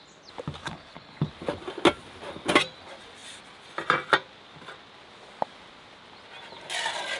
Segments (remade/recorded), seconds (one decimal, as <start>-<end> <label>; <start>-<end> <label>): 0.0-0.6 recorded; 0.6-1.3 remade; 1.3-7.2 recorded